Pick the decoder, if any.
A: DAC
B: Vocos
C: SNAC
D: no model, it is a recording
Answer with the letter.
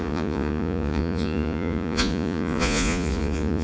B